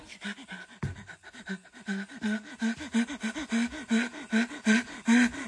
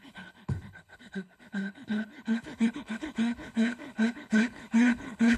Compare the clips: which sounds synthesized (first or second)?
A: second